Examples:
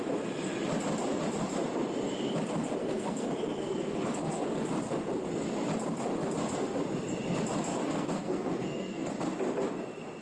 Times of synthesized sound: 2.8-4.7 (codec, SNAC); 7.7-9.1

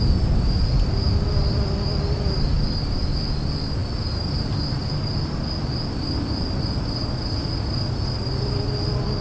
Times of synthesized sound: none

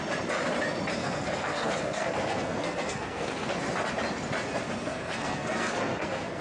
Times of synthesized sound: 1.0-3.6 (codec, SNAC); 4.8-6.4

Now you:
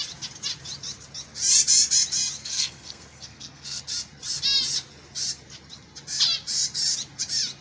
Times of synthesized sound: 2.4-3.8 (codec, SNAC)

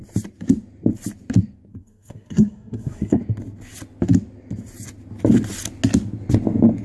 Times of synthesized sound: 1.7-3.2 (codec, SNAC)